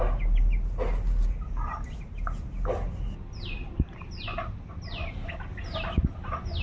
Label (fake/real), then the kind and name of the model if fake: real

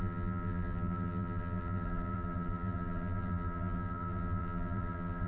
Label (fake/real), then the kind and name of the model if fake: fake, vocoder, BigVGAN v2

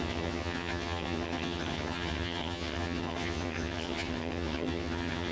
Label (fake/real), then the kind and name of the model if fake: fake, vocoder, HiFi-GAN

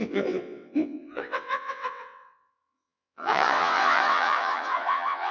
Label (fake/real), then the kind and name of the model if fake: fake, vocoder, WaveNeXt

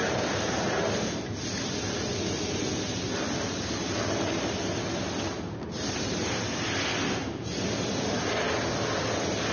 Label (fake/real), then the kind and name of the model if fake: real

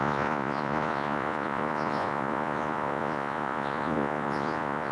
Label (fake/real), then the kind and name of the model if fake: fake, vocoder, Vocos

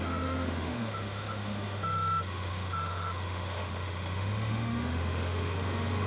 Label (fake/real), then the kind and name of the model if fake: fake, autoencoder, DAC-VAE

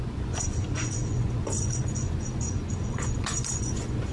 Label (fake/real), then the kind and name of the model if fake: fake, vocoder, Vocos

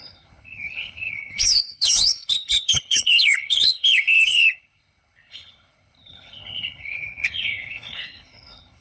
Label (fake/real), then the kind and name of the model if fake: fake, codec, HILCodec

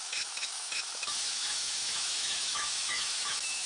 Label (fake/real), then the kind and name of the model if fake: fake, autoencoder, DAC-VAE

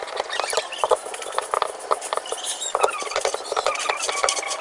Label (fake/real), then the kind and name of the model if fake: real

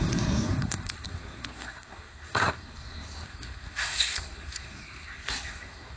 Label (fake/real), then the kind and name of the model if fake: fake, codec, SNAC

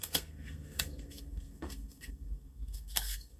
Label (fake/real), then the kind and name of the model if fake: fake, codec, SNAC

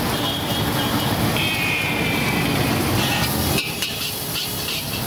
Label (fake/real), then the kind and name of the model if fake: fake, vocoder, BigVGAN v2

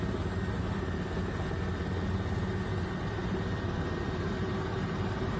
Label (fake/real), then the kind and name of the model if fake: real